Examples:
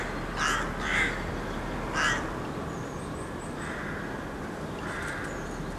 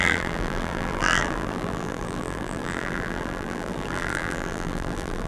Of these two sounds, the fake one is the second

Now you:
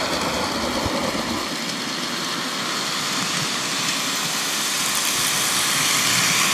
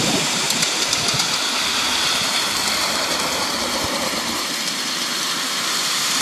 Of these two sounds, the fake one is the second